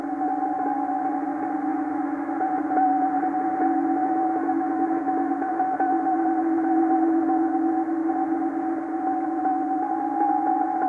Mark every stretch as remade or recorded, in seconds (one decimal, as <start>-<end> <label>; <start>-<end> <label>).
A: 0.0-1.7 recorded; 1.7-2.6 remade; 2.6-4.0 recorded; 4.0-5.3 remade; 5.3-10.9 recorded